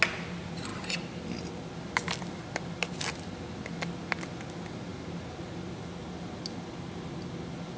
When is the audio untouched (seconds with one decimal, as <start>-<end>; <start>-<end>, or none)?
0.0-7.8